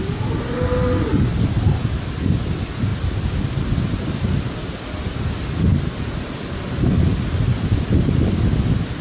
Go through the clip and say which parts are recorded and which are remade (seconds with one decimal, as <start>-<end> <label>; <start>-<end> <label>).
0.0-9.0 recorded